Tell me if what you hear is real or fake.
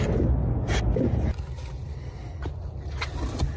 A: real